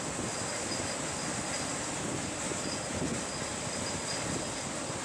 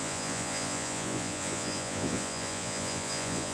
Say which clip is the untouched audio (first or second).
first